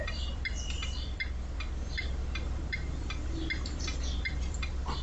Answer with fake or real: fake